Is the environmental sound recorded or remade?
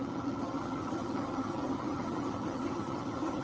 remade